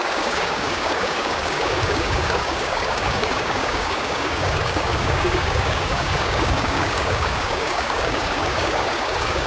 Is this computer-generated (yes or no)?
yes